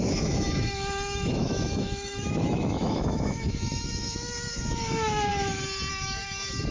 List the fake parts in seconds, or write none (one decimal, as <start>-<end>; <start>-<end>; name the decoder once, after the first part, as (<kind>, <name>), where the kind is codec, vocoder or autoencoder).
0.0-5.3 (autoencoder, DAC-VAE); 5.9-6.7